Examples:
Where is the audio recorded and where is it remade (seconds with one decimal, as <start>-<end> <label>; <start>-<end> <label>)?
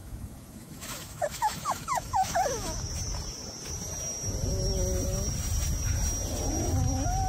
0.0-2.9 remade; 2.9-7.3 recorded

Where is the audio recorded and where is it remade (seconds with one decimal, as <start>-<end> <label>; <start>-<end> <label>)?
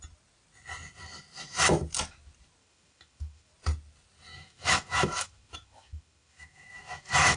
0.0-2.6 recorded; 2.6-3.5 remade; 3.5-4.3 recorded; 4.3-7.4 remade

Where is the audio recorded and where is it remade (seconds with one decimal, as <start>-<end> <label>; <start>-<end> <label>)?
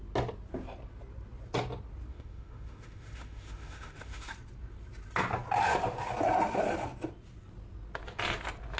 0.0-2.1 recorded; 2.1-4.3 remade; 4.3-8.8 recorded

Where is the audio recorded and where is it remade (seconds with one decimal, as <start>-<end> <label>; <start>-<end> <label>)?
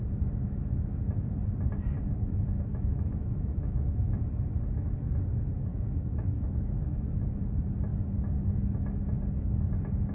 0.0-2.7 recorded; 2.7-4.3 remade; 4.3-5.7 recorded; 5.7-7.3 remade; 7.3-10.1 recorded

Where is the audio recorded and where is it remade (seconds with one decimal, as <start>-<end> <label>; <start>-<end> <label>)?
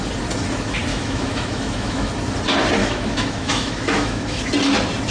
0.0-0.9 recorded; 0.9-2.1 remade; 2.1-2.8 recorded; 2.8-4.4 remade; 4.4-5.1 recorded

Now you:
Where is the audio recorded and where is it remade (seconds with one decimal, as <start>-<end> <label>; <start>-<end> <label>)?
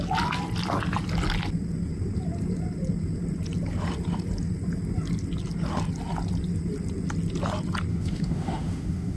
0.0-7.9 recorded; 7.9-9.2 remade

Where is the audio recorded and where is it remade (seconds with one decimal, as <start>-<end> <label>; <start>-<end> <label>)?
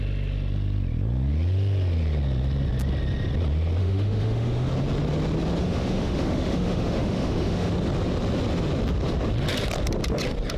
0.0-3.8 recorded; 3.8-4.7 remade; 4.7-5.6 recorded; 5.6-7.7 remade; 7.7-10.6 recorded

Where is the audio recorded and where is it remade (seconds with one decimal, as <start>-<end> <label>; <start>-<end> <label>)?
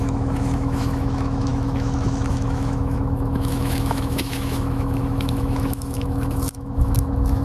0.0-7.4 remade